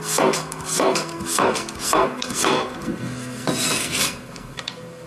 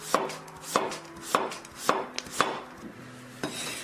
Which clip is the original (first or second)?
second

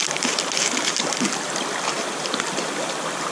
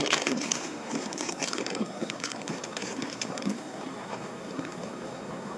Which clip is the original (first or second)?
first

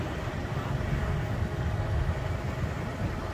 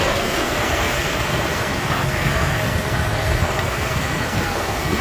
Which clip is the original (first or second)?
first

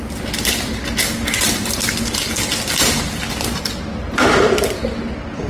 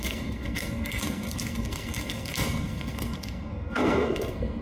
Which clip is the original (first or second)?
first